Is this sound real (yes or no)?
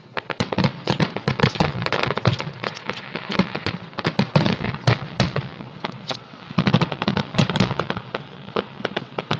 no